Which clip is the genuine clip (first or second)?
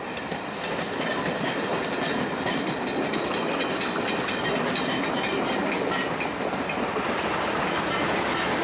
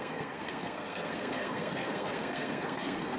first